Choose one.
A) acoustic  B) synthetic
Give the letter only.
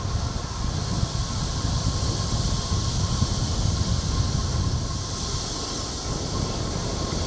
A